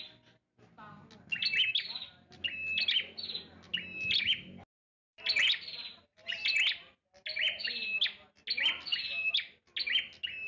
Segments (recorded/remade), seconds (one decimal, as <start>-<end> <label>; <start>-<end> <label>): 0.0-10.5 recorded